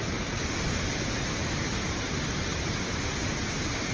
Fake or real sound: real